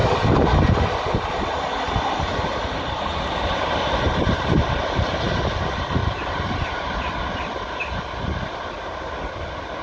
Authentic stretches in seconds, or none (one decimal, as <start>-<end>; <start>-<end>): 0.0-2.5; 5.2-6.0; 7.2-9.8